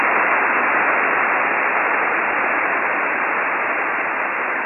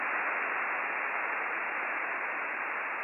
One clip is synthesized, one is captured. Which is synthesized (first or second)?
first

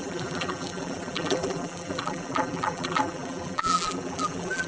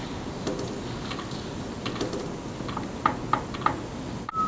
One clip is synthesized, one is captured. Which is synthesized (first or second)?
first